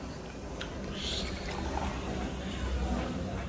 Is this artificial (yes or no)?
no